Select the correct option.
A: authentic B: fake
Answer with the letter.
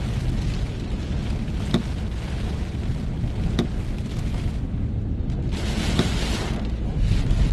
A